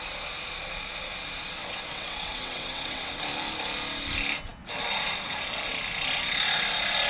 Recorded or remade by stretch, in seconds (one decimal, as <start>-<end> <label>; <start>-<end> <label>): 0.0-1.6 recorded; 1.6-3.1 remade; 3.1-7.1 recorded